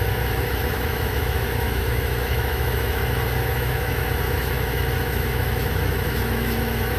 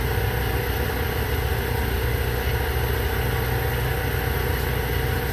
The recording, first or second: second